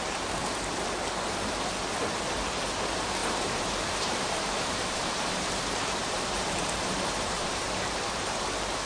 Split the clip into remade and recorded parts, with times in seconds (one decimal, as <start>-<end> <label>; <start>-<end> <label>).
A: 0.0-3.2 recorded; 3.2-8.4 remade; 8.4-8.9 recorded